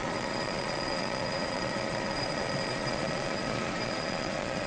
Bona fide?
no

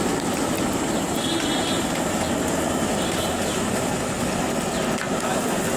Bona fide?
yes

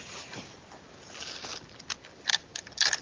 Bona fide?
yes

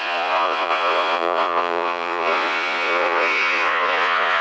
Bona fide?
no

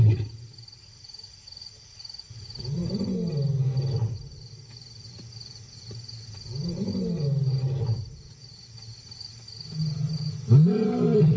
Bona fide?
yes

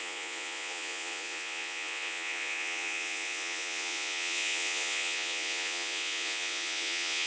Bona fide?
no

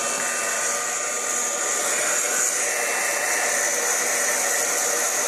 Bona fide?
yes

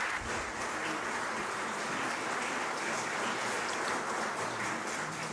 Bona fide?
yes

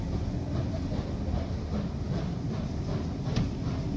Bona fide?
yes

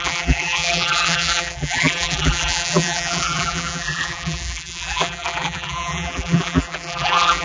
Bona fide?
no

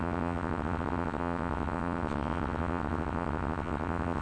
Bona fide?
no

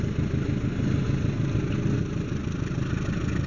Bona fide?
yes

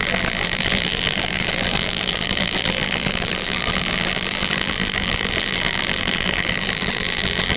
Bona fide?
no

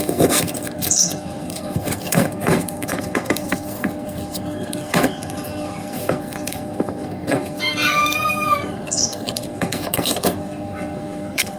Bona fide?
no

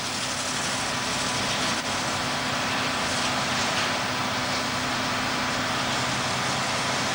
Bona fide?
yes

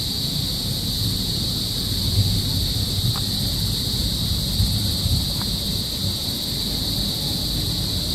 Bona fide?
yes